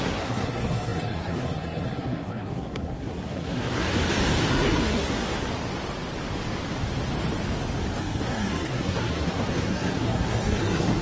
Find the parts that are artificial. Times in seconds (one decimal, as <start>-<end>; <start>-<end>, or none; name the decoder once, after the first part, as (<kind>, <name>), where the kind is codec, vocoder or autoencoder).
0.0-3.9 (codec, SNAC); 4.5-5.5; 8.0-11.0